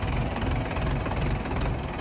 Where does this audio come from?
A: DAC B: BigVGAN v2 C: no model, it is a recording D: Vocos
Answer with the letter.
C